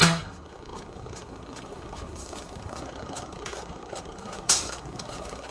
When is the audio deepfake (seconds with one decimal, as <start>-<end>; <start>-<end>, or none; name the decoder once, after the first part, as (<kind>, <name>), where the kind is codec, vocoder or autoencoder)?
0.0-5.5 (codec, SNAC)